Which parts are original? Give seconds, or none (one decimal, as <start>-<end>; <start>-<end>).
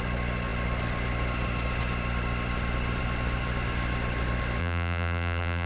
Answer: 0.0-4.6